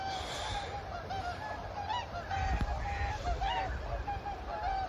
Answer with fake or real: real